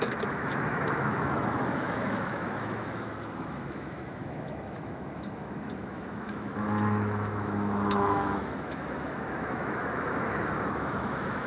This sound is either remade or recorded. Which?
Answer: remade